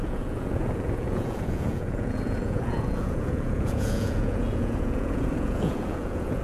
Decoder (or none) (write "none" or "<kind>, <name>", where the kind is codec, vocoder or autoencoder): vocoder, Vocos